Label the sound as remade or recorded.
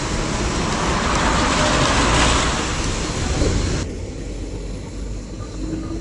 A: recorded